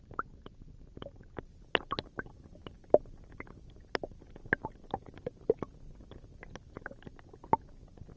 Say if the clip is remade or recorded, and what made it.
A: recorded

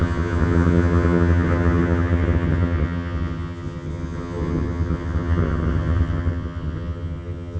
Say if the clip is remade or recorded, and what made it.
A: remade, vocoder, HiFi-GAN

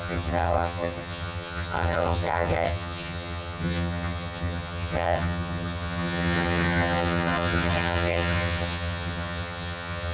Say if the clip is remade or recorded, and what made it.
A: remade, vocoder, HiFi-GAN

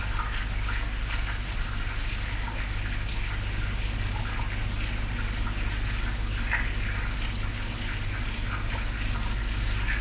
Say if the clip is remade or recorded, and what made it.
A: recorded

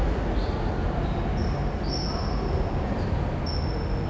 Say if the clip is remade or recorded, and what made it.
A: recorded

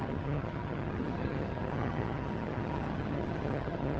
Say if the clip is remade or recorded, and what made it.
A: remade, vocoder, HiFi-GAN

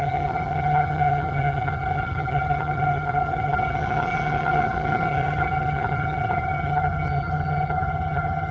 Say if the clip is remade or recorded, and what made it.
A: remade, vocoder, HiFi-GAN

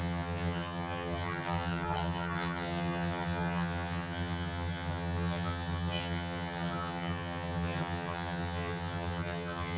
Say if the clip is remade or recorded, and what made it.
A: remade, vocoder, HiFi-GAN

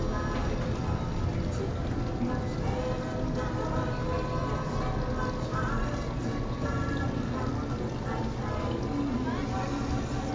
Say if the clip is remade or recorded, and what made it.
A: recorded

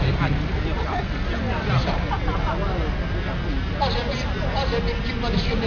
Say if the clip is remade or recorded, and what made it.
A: recorded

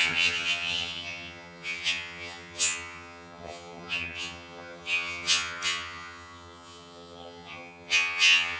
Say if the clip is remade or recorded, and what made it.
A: remade, vocoder, HiFi-GAN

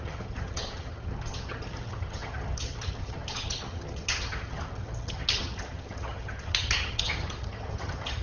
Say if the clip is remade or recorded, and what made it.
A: remade, vocoder, HiFi-GAN